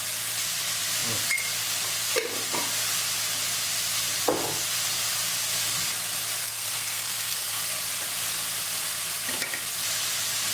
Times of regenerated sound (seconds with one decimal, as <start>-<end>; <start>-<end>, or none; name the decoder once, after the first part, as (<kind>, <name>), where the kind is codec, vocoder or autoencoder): 6.4-7.8 (codec, SNAC)

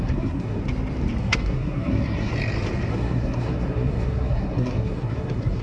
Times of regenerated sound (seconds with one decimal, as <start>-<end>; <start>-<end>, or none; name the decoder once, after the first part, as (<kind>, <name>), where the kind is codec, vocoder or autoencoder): 0.0-0.6 (codec, SNAC); 1.2-2.3; 2.9-5.6